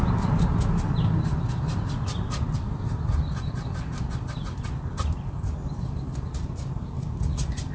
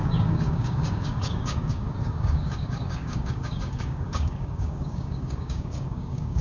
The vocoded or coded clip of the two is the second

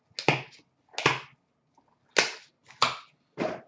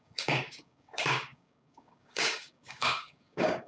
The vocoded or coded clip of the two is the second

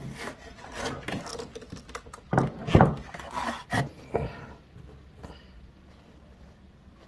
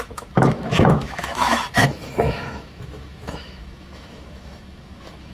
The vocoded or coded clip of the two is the second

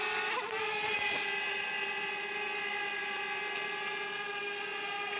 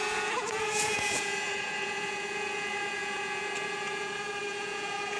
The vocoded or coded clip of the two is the second